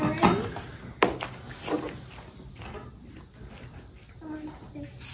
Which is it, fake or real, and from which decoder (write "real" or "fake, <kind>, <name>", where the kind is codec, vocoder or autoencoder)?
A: real